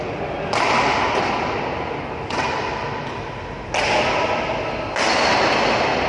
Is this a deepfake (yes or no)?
no